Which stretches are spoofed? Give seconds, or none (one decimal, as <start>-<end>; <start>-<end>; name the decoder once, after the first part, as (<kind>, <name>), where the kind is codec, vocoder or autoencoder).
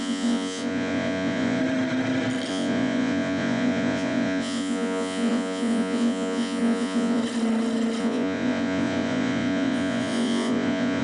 0.0-1.6 (vocoder, Vocos); 2.5-7.2; 8.0-11.0